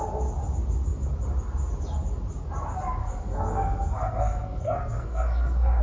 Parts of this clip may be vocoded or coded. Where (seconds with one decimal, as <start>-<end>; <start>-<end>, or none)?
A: 3.0-5.8